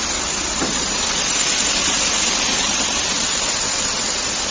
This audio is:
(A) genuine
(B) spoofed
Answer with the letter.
B